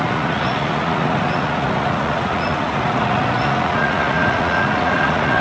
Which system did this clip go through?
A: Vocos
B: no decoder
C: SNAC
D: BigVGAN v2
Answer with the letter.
A